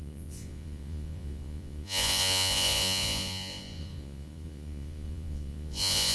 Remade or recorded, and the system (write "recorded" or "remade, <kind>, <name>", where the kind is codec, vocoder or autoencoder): remade, vocoder, Vocos